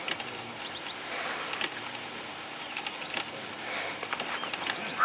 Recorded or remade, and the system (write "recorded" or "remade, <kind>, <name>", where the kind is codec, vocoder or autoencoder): recorded